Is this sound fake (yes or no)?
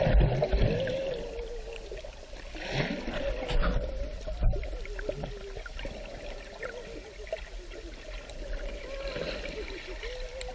no